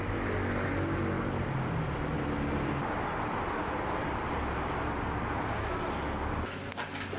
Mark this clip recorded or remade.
recorded